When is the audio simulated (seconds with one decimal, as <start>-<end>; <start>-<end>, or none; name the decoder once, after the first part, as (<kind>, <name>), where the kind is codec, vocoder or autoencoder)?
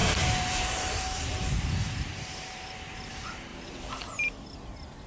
0.0-3.1 (vocoder, BigVGAN v2); 3.5-4.0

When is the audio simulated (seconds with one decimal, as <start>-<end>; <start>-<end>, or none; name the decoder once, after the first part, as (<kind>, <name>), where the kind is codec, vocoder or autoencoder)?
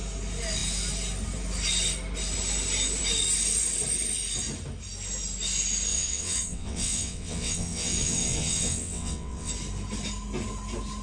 5.9-9.5 (vocoder, WaveNeXt)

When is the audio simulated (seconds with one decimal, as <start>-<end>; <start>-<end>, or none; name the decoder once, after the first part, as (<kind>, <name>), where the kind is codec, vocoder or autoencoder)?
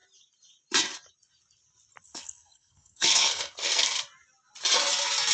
2.1-4.0 (codec, SNAC)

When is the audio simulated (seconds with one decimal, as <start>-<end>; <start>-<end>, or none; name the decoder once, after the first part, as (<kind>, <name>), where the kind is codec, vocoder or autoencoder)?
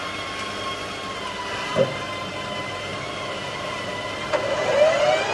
none